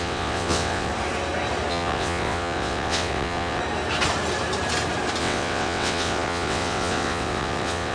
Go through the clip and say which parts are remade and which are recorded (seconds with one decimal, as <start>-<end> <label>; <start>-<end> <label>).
0.0-0.9 remade; 0.9-1.7 recorded; 1.7-3.6 remade; 3.6-5.2 recorded; 5.2-7.9 remade